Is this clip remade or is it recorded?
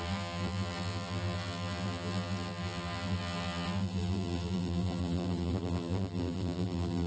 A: remade